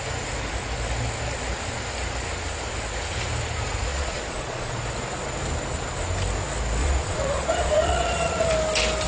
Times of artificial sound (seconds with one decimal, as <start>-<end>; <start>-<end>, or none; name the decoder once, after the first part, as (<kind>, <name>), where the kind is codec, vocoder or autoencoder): 3.9-4.7 (vocoder, Vocos); 6.8-8.5